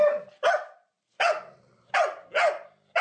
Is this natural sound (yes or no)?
yes